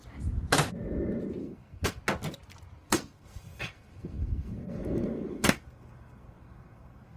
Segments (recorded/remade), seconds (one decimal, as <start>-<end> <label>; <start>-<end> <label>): 0.0-1.4 recorded; 1.4-2.0 remade; 2.0-2.8 recorded; 2.8-7.2 remade